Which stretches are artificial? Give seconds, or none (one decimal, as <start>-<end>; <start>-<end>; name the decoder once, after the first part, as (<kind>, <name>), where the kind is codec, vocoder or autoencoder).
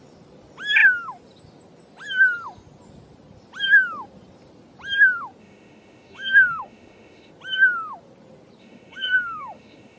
5.4-7.3 (autoencoder, DAC-VAE); 8.6-10.0